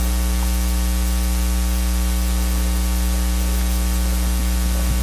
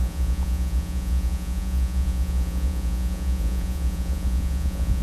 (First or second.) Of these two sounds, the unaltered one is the first